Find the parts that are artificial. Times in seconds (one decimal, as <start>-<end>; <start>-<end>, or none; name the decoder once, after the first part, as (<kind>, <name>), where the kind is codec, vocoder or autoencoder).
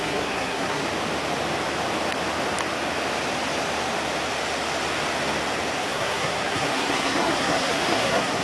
0.0-0.8 (codec, SNAC); 5.8-8.4